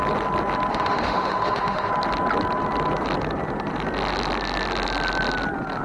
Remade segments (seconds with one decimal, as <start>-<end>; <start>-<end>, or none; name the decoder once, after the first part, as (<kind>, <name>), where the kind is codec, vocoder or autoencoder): 0.7-1.9 (autoencoder, DAC-VAE)